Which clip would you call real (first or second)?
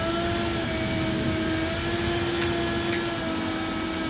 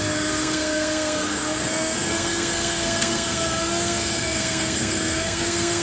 first